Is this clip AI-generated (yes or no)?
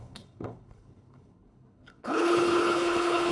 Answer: yes